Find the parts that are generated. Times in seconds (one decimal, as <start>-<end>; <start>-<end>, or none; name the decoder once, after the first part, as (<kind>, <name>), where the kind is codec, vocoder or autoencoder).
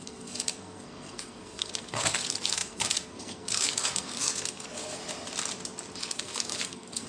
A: 0.0-5.0 (codec, SNAC); 6.0-7.1